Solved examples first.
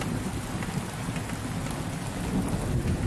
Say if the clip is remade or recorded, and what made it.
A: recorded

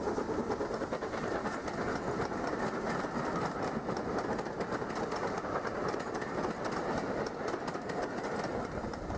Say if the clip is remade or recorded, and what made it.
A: recorded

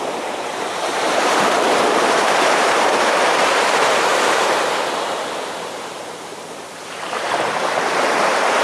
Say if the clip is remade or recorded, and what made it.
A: remade, vocoder, BigVGAN v2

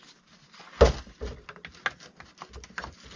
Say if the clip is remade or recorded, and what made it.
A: recorded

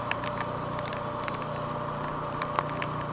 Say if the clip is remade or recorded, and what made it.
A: recorded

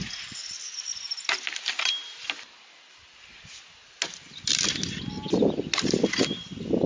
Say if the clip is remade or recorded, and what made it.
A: recorded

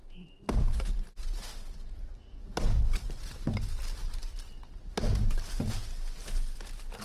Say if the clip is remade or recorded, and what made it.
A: recorded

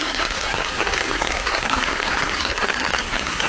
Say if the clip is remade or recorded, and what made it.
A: remade, codec, SNAC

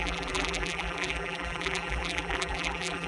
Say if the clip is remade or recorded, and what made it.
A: remade, vocoder, BigVGAN v2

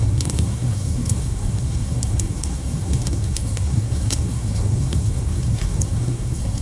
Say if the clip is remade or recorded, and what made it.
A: remade, codec, SNAC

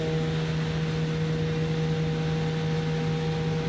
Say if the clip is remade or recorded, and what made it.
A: recorded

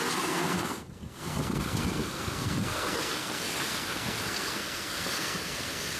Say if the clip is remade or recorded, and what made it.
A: remade, codec, SNAC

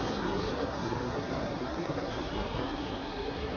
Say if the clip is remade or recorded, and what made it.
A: remade, codec, SNAC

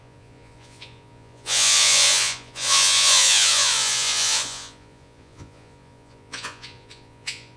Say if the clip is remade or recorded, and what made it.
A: remade, vocoder, Vocos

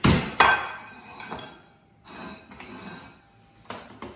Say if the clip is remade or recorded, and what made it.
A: recorded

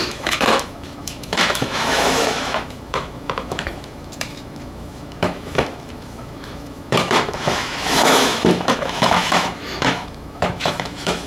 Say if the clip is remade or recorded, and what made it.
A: remade, autoencoder, DAC-VAE